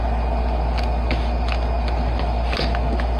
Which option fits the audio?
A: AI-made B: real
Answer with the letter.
B